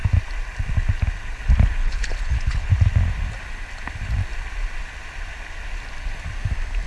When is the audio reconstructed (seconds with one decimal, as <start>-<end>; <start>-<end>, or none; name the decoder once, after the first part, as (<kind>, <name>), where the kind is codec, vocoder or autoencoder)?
1.8-2.7 (codec, HILCodec)